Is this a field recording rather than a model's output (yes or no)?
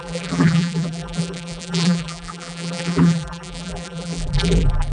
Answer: no